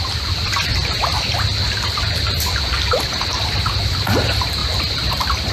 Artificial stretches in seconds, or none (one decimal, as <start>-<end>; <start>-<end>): 0.0-0.7; 2.9-4.6; 5.1-5.5